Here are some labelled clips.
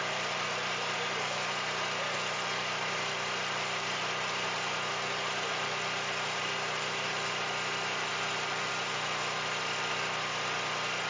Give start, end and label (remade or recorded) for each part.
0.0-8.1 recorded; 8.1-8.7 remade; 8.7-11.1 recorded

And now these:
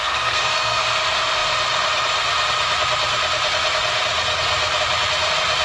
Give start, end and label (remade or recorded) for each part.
0.0-0.8 remade; 0.8-5.6 recorded

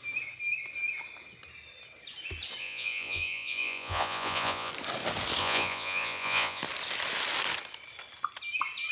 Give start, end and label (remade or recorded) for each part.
0.0-2.6 recorded; 2.6-4.7 remade; 4.7-5.4 recorded; 5.4-6.6 remade; 6.6-8.9 recorded

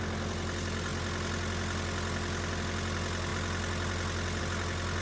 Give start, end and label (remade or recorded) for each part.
0.0-5.0 recorded

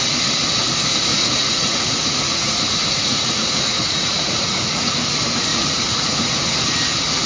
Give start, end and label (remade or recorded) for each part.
0.0-1.1 recorded; 1.1-4.9 remade; 4.9-5.5 recorded; 5.5-6.3 remade; 6.3-7.3 recorded

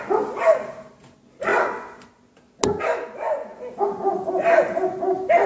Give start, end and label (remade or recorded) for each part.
0.0-5.5 recorded

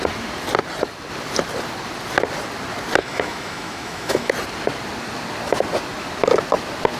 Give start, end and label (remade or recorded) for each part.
0.0-3.0 recorded; 3.0-4.3 remade; 4.3-7.0 recorded

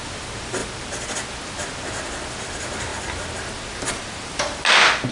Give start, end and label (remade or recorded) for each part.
0.0-5.1 recorded